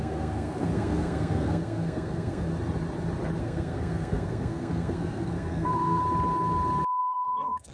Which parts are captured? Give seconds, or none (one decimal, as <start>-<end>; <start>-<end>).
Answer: 2.5-3.4; 6.0-7.0